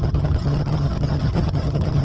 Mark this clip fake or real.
fake